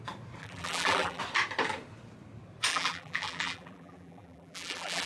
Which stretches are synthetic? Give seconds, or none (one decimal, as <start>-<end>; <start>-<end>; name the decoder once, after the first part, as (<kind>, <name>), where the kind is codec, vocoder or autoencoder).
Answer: 0.4-1.2 (vocoder, BigVGAN v2); 2.7-5.1